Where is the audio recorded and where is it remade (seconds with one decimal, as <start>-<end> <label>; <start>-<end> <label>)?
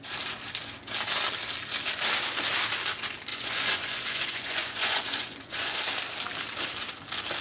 0.0-3.3 recorded; 3.3-5.8 remade; 5.8-7.4 recorded